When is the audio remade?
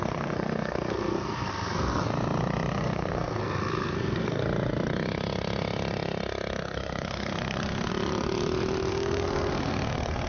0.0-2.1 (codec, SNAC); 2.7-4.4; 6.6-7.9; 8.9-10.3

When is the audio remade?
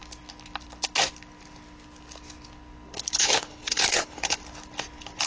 3.2-4.4 (codec, HILCodec)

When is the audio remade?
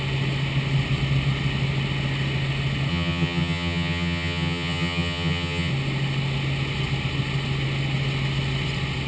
2.9-5.7 (vocoder, HiFi-GAN)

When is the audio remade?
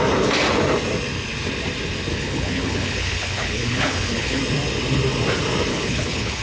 2.1-4.4 (codec, HILCodec); 5.7-6.4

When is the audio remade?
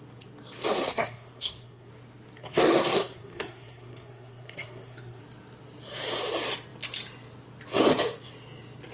0.7-1.9 (codec, SNAC); 2.4-5.2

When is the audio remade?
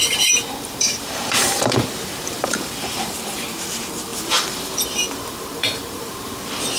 0.0-6.8 (vocoder, BigVGAN v2)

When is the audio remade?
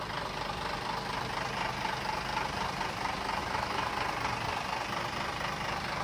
3.4-3.9 (autoencoder, DAC-VAE)